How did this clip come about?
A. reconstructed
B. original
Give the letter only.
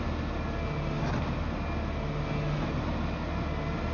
B